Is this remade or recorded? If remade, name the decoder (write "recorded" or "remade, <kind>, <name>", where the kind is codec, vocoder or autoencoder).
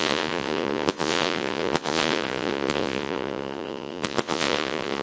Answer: remade, vocoder, Vocos